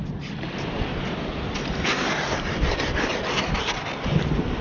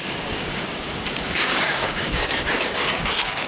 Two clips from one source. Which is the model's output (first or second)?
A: second